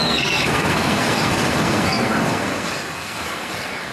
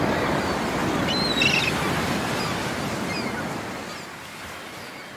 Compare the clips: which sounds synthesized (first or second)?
first